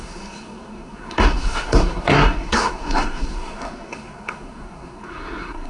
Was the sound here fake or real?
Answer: fake